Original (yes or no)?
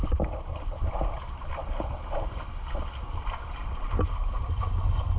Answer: yes